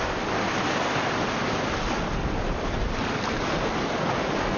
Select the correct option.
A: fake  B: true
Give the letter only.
B